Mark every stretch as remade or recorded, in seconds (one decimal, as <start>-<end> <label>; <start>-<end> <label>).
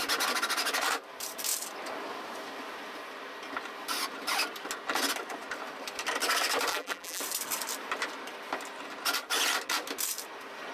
0.0-6.7 recorded; 6.7-7.2 remade; 7.2-10.7 recorded